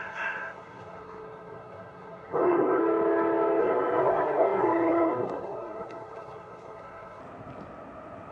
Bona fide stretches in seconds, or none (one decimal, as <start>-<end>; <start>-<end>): 2.8-3.6; 7.2-8.3